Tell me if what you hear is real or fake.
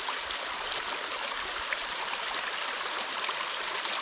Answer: real